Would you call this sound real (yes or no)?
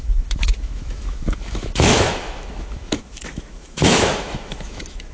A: no